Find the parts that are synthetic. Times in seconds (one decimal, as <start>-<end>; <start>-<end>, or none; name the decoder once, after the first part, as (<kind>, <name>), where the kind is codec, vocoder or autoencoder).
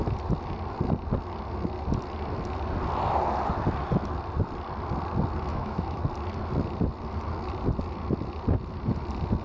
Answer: 5.5-6.0 (autoencoder, DAC-VAE)